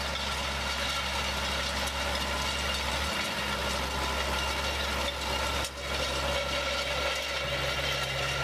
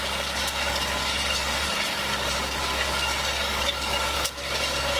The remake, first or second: second